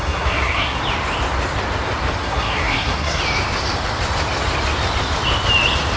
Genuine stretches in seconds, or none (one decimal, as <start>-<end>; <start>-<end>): 0.8-2.2; 3.2-6.0